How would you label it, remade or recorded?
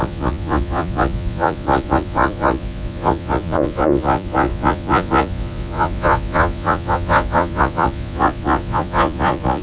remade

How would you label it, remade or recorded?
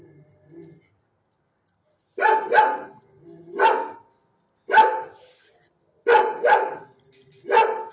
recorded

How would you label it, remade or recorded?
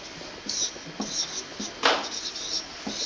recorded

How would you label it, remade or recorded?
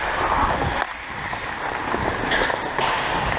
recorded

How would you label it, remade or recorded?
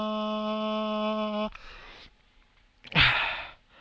recorded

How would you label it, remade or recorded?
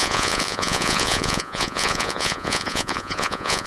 remade